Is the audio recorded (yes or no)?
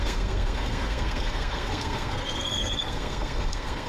no